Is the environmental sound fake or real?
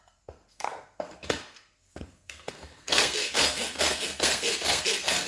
fake